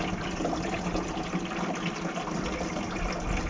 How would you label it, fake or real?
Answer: real